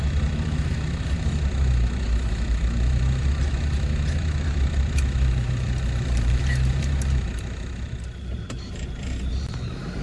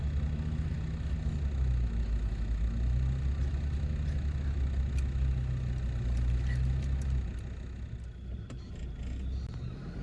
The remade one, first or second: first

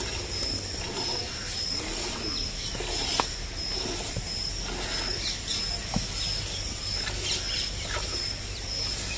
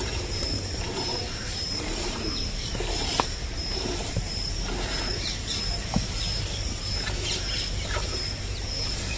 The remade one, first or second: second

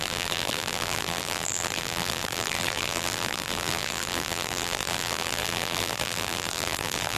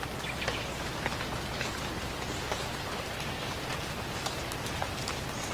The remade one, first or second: first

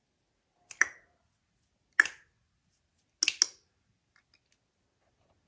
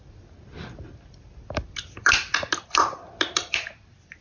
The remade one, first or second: second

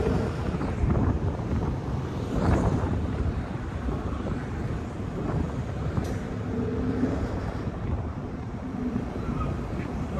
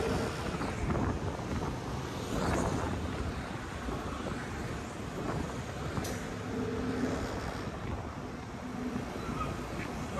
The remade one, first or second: first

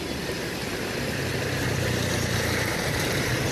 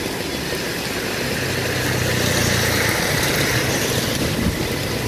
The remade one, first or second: first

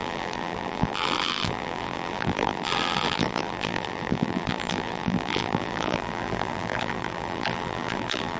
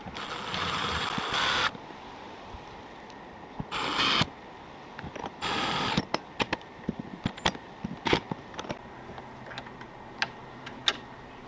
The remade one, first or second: first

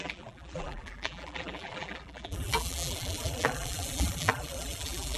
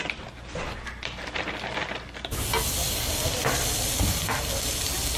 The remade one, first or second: first